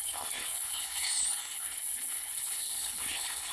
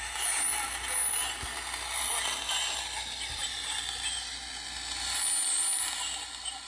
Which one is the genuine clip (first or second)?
second